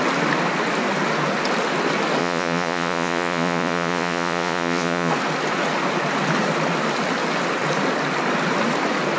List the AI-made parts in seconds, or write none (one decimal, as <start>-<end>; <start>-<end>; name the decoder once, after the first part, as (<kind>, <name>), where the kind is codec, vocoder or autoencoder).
2.2-5.1 (vocoder, Vocos)